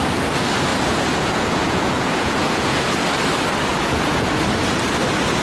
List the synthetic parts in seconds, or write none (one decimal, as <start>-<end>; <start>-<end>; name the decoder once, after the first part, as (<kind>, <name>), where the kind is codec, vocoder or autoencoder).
0.7-3.0 (vocoder, Vocos); 3.7-4.3